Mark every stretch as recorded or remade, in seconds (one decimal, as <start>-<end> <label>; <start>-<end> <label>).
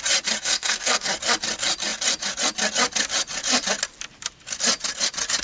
0.0-0.4 recorded; 0.4-1.1 remade; 1.1-5.4 recorded